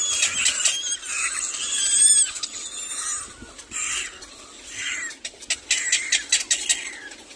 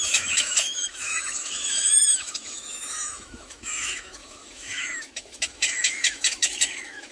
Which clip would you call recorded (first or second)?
first